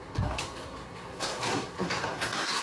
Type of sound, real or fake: fake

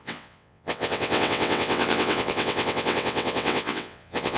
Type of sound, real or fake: fake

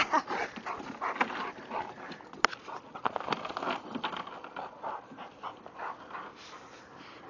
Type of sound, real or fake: real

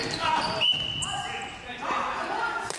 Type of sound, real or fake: real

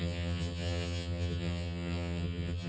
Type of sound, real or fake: fake